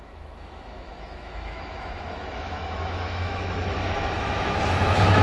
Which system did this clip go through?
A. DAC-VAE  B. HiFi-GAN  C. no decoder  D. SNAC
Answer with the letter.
A